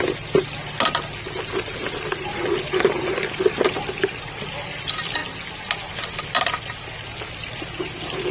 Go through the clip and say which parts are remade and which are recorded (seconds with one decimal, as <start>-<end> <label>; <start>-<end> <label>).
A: 0.0-8.3 recorded